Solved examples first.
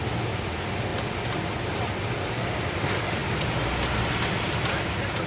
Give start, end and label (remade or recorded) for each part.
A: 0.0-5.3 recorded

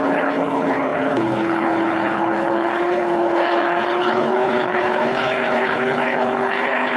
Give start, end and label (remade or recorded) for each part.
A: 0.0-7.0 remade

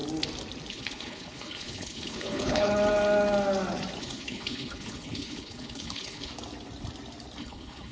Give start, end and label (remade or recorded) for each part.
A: 0.0-0.7 recorded; 0.7-2.7 remade; 2.7-4.0 recorded; 4.0-6.3 remade; 6.3-7.4 recorded; 7.4-7.9 remade